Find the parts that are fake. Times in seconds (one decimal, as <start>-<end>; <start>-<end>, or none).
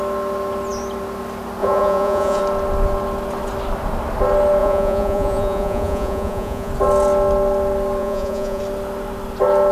1.6-2.4; 4.6-6.7; 8.0-8.6